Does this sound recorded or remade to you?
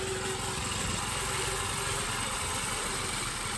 recorded